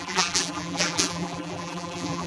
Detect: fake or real fake